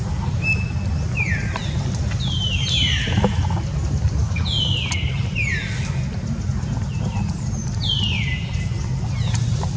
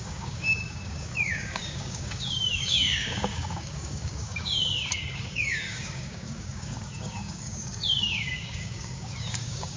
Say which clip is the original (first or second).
first